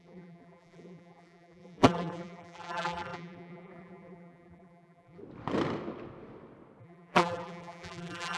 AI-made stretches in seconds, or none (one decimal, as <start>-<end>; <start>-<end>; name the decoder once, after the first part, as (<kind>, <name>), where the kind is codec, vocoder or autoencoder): 0.0-5.2 (vocoder, BigVGAN v2); 6.8-8.4